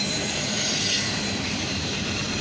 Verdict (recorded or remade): remade